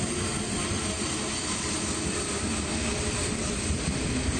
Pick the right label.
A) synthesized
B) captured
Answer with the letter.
B